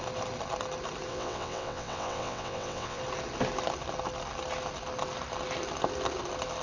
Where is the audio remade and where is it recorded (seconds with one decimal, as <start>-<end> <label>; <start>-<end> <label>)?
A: 0.0-1.1 recorded; 1.1-3.0 remade; 3.0-6.6 recorded